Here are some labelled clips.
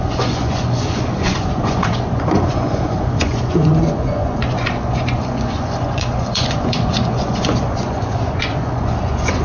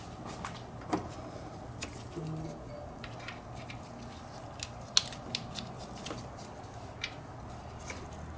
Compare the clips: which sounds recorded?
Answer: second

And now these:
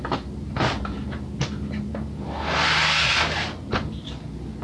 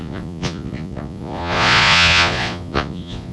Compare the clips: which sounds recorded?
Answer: first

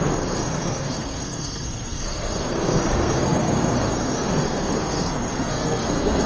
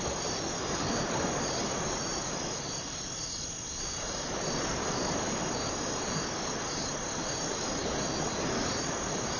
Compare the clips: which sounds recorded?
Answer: second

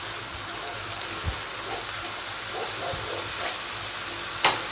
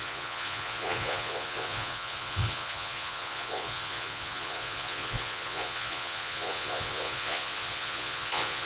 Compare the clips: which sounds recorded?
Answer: first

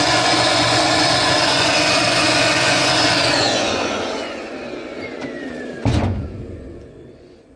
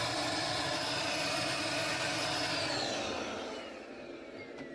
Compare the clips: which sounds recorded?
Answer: second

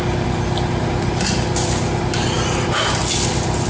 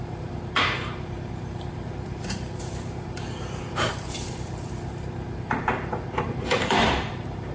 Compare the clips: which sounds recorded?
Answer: first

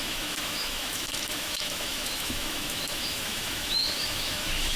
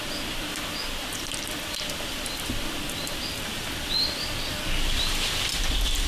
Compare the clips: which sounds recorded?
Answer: second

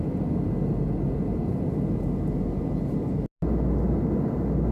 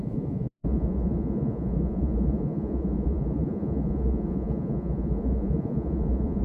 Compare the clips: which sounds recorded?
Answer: first